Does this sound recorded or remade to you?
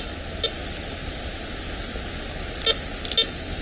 recorded